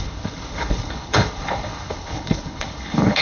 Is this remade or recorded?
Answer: remade